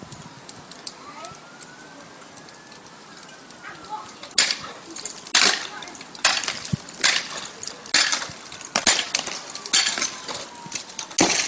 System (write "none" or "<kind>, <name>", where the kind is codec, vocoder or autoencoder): none